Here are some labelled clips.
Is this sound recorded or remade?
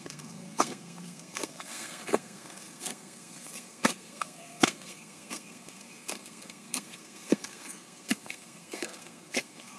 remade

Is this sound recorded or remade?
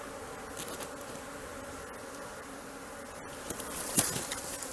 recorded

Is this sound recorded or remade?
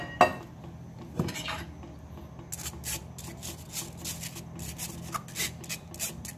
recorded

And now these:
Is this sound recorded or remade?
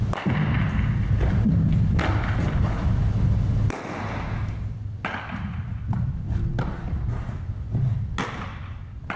recorded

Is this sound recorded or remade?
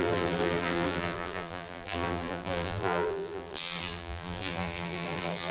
remade